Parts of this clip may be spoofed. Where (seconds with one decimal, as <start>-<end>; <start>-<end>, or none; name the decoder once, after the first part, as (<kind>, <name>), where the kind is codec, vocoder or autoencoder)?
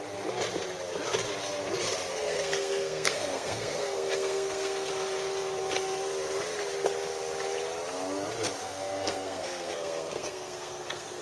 2.1-4.9 (codec, SNAC); 8.6-11.2